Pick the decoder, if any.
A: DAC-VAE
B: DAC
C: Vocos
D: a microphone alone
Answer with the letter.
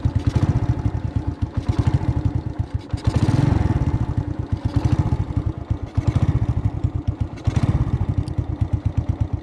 D